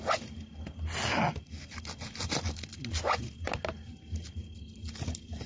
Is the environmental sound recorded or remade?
recorded